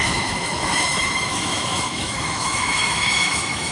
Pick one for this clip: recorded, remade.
remade